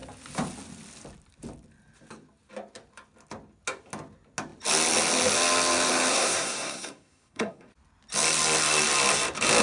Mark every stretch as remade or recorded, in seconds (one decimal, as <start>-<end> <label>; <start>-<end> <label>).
0.0-6.1 recorded; 6.1-7.7 remade; 7.7-9.6 recorded